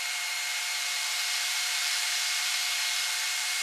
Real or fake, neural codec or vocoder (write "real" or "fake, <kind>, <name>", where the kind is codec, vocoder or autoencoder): fake, vocoder, BigVGAN v2